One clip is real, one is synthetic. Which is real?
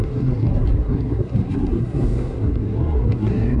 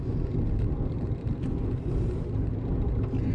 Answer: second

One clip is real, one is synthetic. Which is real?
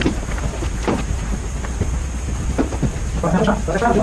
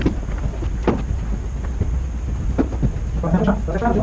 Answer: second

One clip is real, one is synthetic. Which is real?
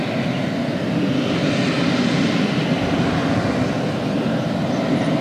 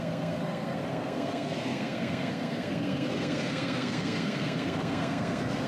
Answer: first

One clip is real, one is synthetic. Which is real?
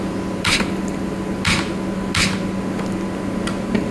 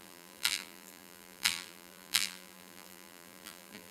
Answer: first